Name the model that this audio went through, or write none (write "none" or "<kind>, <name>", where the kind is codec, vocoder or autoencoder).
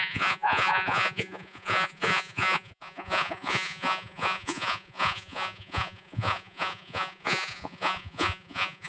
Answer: vocoder, Vocos